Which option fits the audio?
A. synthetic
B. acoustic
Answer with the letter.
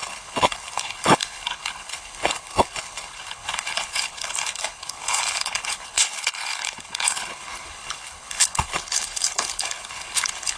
A